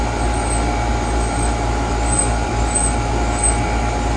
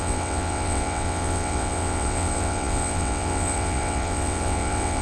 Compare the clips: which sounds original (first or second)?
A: first